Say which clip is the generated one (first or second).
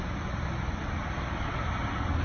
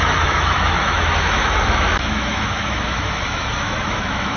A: second